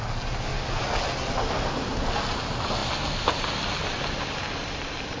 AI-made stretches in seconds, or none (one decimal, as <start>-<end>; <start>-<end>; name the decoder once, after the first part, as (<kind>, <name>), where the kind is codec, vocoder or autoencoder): none